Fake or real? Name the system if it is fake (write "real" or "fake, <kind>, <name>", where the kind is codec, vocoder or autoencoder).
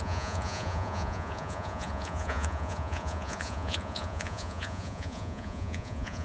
fake, vocoder, Vocos